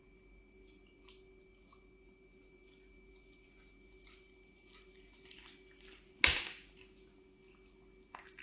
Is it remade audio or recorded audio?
recorded